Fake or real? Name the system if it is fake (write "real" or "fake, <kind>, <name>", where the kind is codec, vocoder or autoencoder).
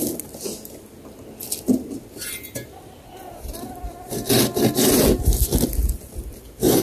real